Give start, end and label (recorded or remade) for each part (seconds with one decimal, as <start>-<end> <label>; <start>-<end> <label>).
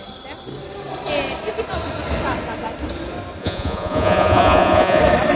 0.0-3.4 recorded; 3.4-5.0 remade; 5.0-5.4 recorded